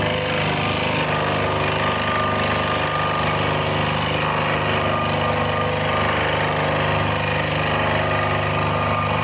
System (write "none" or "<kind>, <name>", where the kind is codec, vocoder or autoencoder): none